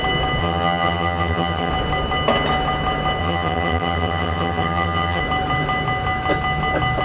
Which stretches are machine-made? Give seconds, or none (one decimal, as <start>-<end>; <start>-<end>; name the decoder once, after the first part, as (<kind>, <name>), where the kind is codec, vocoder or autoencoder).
0.4-1.7 (vocoder, HiFi-GAN); 3.2-5.2